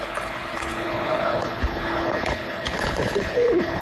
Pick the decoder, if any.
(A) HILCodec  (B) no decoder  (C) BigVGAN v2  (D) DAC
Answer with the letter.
A